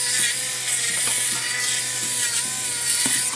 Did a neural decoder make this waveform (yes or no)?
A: no